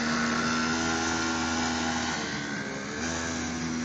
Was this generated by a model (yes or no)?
no